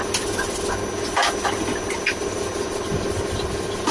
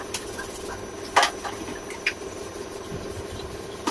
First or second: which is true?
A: first